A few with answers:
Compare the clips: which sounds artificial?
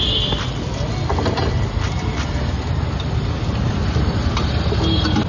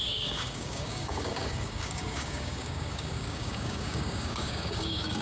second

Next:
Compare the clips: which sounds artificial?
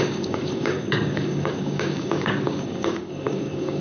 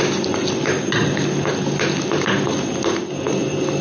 first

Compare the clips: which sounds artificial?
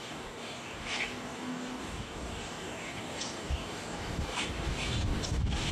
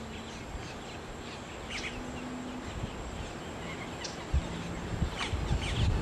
first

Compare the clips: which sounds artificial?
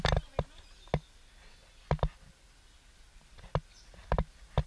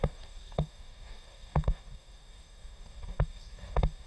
second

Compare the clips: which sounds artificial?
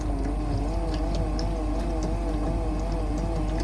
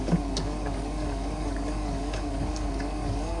second